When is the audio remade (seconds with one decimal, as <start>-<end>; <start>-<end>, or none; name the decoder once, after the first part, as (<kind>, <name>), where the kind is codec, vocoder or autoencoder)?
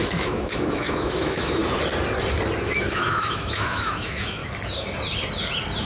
0.0-1.6 (autoencoder, DAC-VAE); 2.8-4.4